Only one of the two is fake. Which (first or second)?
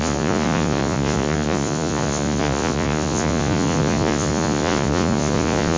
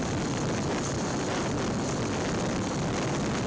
first